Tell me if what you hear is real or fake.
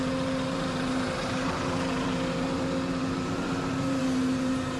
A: fake